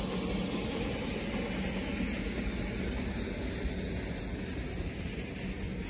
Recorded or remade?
recorded